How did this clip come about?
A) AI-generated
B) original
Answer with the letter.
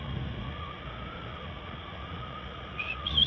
A